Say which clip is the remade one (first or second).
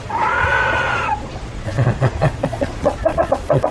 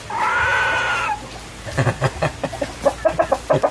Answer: first